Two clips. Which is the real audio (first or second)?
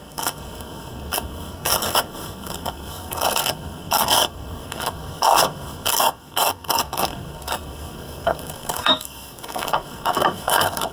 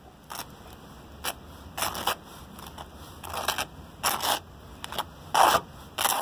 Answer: second